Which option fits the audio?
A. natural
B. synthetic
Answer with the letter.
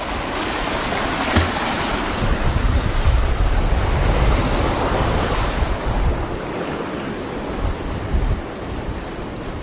A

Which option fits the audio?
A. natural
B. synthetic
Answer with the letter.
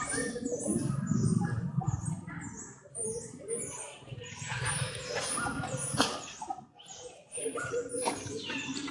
B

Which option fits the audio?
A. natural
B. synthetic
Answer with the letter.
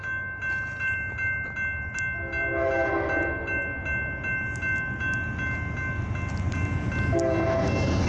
A